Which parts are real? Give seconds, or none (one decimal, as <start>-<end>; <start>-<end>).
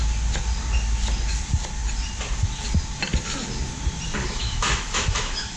0.0-4.2